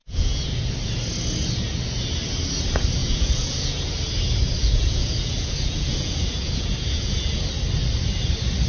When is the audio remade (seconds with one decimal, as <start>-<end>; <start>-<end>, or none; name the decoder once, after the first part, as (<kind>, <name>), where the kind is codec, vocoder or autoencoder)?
0.0-0.7 (vocoder, Vocos); 3.0-3.9; 4.6-7.4